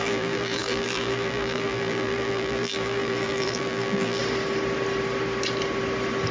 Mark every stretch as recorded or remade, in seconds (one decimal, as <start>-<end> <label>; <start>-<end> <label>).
0.0-4.2 remade; 4.2-6.3 recorded